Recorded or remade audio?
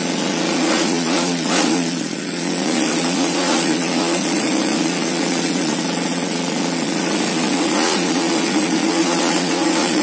remade